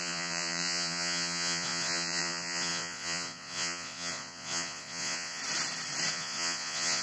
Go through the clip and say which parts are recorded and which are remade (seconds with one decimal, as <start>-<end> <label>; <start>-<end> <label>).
0.0-5.4 remade; 5.4-6.1 recorded; 6.1-7.0 remade